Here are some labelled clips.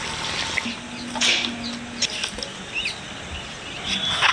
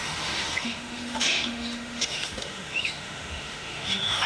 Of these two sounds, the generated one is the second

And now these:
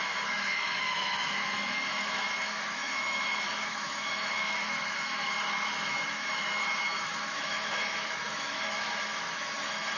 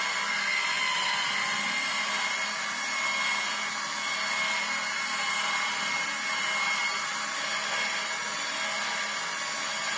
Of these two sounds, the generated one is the first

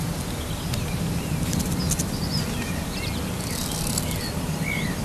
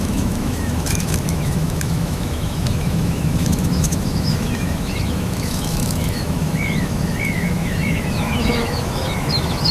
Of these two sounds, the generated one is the second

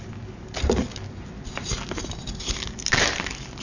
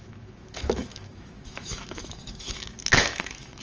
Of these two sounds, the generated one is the second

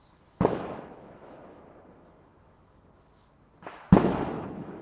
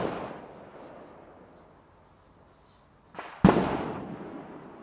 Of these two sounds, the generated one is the first